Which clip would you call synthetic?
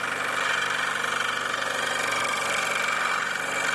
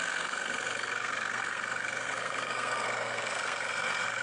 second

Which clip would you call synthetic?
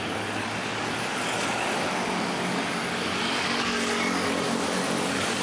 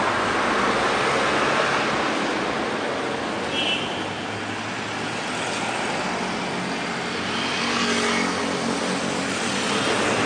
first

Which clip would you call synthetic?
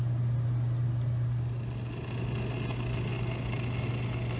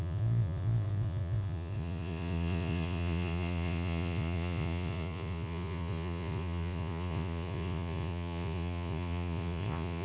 second